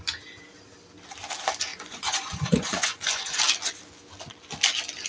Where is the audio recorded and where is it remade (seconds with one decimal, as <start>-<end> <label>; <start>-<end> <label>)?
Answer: 0.0-1.7 recorded; 1.7-3.4 remade; 3.4-5.1 recorded